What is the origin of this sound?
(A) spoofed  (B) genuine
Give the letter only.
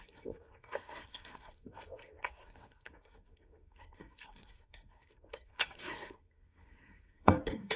A